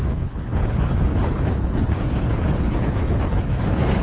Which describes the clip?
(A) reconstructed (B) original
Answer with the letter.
A